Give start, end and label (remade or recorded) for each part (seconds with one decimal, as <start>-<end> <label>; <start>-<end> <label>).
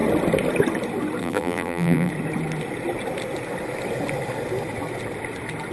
0.0-1.2 recorded; 1.2-2.1 remade; 2.1-5.7 recorded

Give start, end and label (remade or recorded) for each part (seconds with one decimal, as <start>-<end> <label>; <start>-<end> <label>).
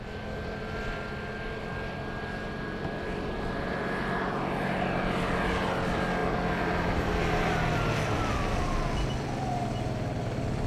0.0-10.7 recorded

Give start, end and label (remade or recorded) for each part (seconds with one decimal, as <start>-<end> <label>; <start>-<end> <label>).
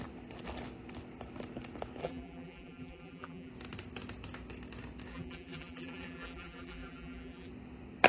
0.0-2.0 recorded; 2.0-3.5 remade; 3.5-5.1 recorded; 5.1-7.5 remade; 7.5-8.1 recorded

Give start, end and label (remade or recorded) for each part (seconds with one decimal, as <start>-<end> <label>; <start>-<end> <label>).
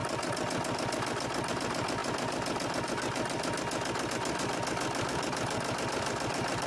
0.0-1.5 recorded; 1.5-2.0 remade; 2.0-4.1 recorded; 4.1-6.7 remade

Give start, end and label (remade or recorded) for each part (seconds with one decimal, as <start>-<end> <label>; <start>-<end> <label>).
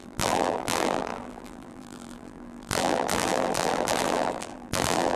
0.0-5.2 remade